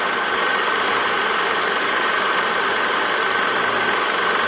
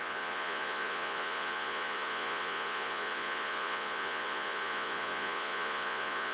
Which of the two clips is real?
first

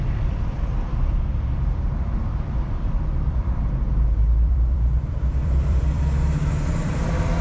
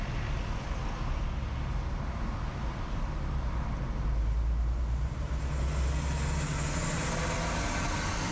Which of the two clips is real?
second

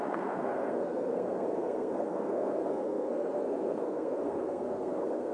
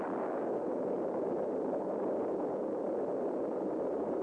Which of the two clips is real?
second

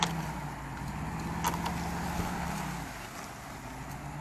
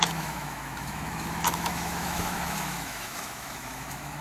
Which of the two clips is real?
first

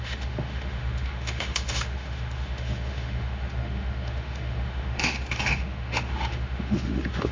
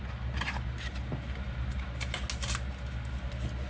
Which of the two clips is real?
second